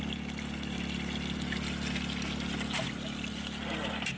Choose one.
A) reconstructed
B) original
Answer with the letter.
B